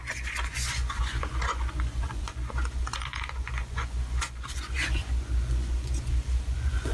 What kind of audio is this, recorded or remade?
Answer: remade